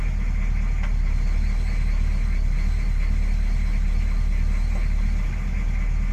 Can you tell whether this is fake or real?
real